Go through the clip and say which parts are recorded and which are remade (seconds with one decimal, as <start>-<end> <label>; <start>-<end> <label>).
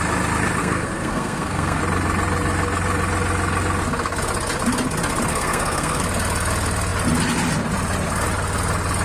0.0-0.6 recorded; 0.6-1.8 remade; 1.8-5.3 recorded; 5.3-6.0 remade; 6.0-9.0 recorded